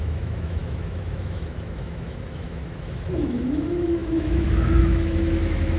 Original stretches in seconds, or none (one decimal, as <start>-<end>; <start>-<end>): none